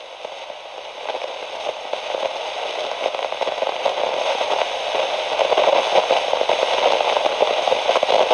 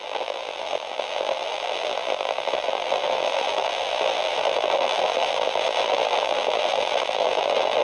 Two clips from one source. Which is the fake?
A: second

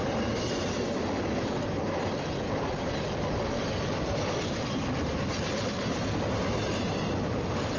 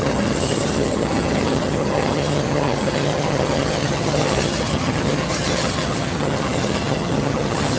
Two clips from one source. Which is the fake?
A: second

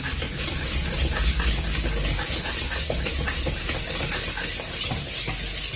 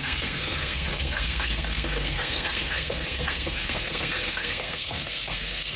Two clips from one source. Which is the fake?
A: second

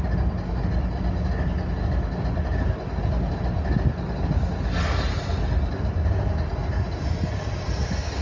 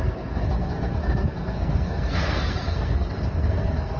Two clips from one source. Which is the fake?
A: second